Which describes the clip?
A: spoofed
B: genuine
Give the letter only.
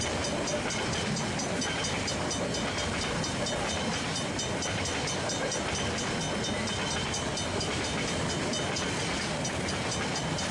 B